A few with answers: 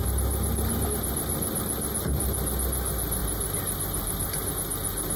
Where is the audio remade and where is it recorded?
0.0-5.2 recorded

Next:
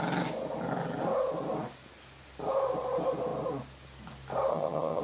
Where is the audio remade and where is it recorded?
0.0-4.5 recorded; 4.5-5.0 remade

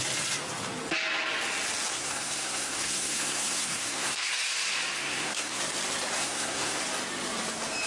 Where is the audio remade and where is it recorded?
0.0-1.9 recorded; 1.9-4.3 remade; 4.3-5.0 recorded; 5.0-5.6 remade; 5.6-6.2 recorded; 6.2-6.8 remade; 6.8-7.9 recorded

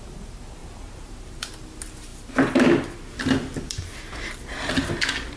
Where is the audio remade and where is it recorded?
0.0-0.6 recorded; 0.6-1.5 remade; 1.5-5.4 recorded